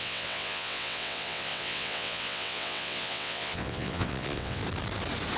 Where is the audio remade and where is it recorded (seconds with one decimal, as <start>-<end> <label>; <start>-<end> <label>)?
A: 0.0-4.6 remade; 4.6-5.4 recorded